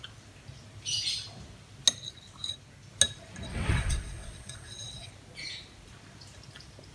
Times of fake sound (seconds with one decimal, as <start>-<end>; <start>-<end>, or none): 3.5-5.1